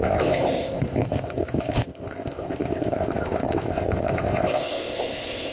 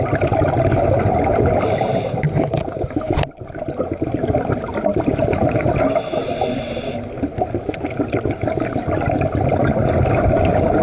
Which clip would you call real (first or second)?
second